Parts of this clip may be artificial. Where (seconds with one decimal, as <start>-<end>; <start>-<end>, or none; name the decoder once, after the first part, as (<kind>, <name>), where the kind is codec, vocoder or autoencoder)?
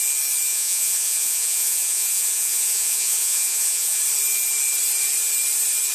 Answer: 0.5-4.0 (vocoder, Vocos)